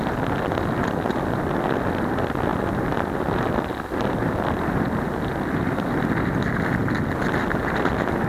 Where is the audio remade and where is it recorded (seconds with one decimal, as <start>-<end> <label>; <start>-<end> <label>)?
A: 0.0-8.3 recorded